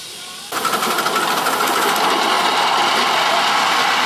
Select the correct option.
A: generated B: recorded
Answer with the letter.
B